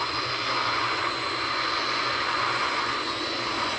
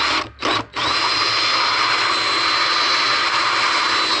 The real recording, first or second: second